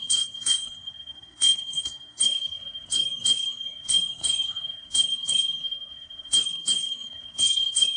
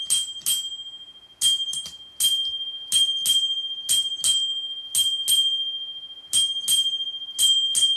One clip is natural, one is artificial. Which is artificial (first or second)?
first